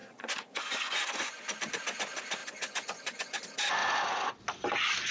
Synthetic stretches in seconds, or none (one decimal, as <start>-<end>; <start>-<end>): 0.0-1.4; 2.4-3.4; 3.8-4.4